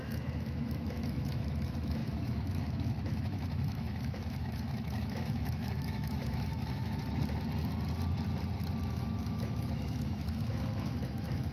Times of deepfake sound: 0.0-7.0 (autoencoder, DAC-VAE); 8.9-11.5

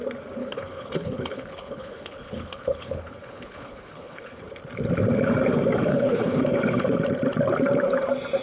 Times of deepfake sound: 0.4-4.5 (codec, HILCodec); 5.9-6.4